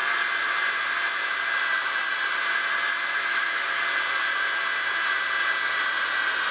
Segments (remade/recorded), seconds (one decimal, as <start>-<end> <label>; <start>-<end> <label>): 0.0-3.3 recorded; 3.3-3.8 remade; 3.8-6.5 recorded